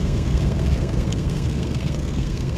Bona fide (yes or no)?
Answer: no